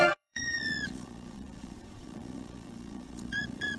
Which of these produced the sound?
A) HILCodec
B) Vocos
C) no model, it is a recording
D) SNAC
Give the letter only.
B